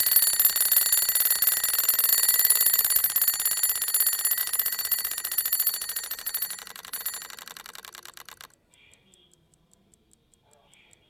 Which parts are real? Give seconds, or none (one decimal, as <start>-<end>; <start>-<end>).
0.0-2.1; 3.0-4.4; 7.0-11.1